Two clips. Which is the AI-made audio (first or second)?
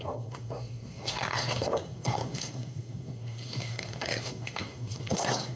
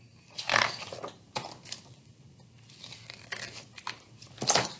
first